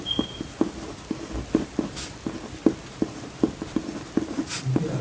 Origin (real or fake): real